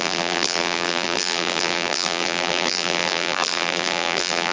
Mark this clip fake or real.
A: fake